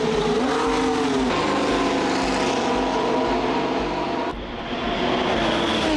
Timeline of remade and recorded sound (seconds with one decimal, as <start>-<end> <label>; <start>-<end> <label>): 0.0-6.0 recorded

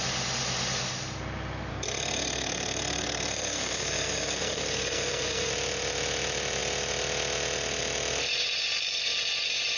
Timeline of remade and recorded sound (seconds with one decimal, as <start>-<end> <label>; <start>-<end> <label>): 0.0-1.7 recorded; 1.7-5.5 remade; 5.5-9.8 recorded

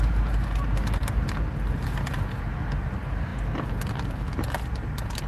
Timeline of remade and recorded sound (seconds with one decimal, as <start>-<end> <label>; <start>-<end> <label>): 0.0-5.3 recorded

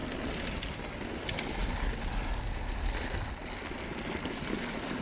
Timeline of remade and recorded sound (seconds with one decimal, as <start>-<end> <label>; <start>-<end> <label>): 0.0-5.0 recorded

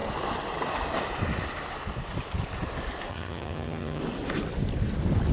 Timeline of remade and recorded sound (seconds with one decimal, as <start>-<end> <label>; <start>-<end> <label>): 0.0-3.1 recorded; 3.1-4.0 remade; 4.0-5.3 recorded